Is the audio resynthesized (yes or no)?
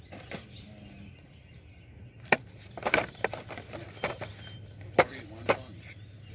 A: no